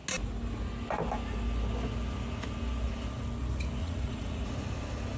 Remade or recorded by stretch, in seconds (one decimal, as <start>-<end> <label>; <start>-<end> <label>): 0.0-3.8 recorded; 3.8-4.5 remade; 4.5-5.2 recorded